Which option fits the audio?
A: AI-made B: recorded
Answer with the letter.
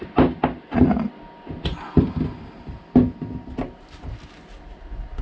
B